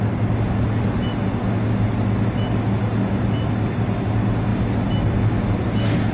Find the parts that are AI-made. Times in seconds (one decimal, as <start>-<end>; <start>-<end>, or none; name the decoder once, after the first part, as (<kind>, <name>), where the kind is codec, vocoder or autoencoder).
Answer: none